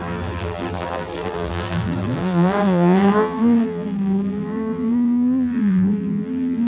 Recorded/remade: remade